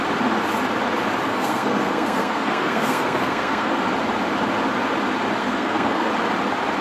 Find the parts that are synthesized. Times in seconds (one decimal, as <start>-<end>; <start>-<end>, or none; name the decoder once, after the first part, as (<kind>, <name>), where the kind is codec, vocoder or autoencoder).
1.3-3.8 (codec, SNAC); 5.4-6.1